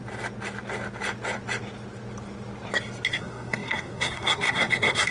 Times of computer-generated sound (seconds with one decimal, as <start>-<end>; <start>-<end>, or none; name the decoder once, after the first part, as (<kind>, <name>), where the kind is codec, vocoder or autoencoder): 3.1-5.1 (codec, SNAC)